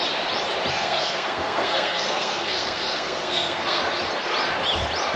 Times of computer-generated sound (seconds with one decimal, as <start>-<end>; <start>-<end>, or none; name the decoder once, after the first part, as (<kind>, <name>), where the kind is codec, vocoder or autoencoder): 0.7-3.8 (codec, SNAC)